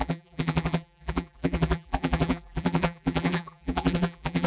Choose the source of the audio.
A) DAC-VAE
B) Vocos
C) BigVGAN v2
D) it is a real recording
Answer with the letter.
C